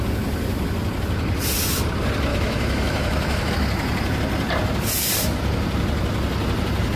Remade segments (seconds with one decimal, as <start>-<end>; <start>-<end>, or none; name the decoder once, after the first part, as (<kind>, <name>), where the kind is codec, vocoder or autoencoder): 2.3-3.5 (autoencoder, DAC-VAE)